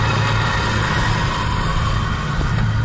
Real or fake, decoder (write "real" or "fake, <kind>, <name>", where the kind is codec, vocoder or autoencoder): real